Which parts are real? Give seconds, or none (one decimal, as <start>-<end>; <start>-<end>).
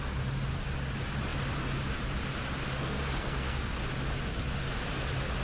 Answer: 0.0-2.8; 3.7-5.4